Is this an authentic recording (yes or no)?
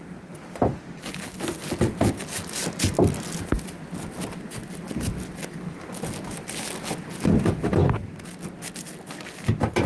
yes